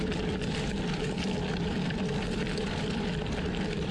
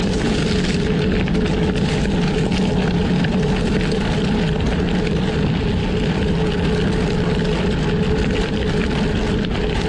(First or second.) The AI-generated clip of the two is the first